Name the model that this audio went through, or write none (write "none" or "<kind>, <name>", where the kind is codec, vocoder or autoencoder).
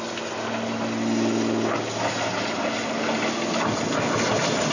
none